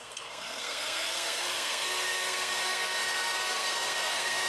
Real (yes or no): no